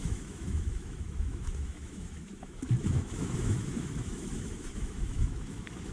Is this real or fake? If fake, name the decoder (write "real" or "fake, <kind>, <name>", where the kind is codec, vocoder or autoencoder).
fake, autoencoder, DAC-VAE